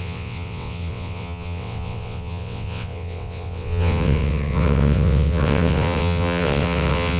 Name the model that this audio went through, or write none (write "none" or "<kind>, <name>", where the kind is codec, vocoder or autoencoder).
vocoder, WaveNeXt